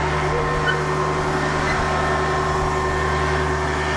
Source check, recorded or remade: recorded